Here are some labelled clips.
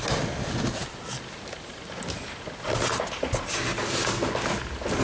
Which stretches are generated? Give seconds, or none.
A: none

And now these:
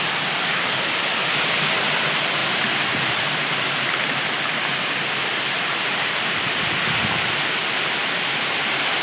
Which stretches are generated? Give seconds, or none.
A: none

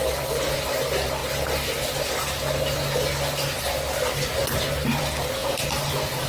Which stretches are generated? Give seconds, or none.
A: none

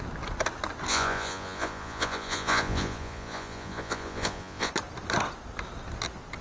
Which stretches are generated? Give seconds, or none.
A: 0.9-4.7

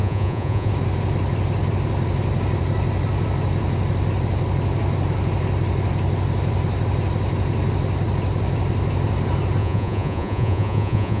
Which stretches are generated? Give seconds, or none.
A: 0.0-0.7; 9.6-11.2

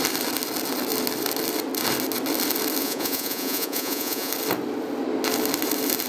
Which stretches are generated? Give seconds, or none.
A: 2.8-4.3

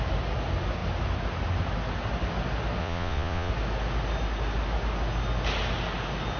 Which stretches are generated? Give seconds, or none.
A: 2.8-3.5